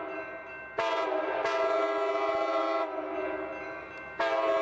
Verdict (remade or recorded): recorded